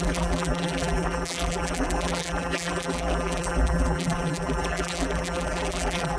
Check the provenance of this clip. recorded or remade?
remade